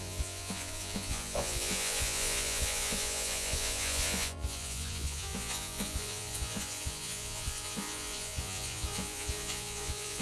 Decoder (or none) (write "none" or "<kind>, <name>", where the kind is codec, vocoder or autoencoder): vocoder, Vocos